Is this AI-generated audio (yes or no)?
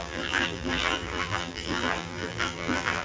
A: yes